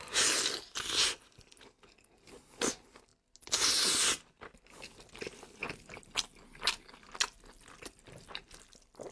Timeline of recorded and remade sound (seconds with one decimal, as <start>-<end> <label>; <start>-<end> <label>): 0.0-9.1 recorded